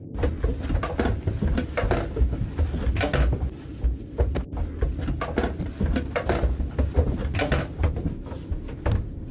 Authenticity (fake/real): real